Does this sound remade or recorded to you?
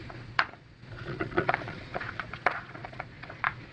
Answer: remade